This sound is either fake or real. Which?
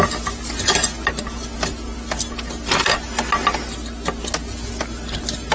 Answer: real